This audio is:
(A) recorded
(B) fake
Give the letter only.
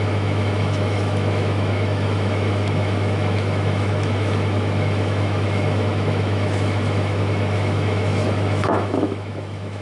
B